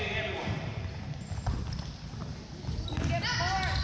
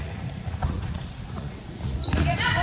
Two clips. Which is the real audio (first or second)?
first